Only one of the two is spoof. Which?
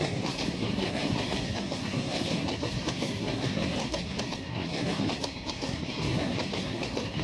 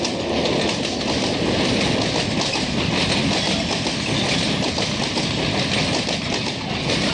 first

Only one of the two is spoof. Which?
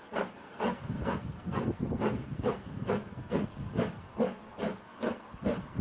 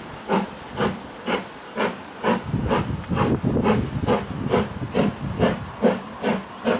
first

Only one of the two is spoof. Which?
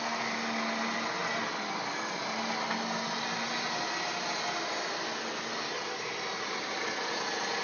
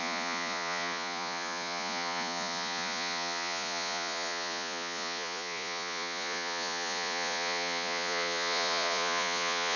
second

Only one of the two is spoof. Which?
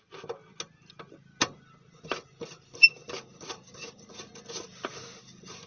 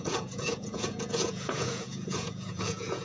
second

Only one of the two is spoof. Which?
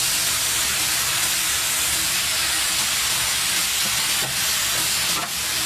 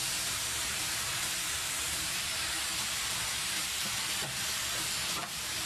second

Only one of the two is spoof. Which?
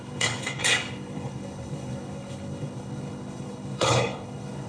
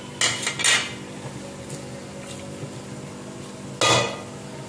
first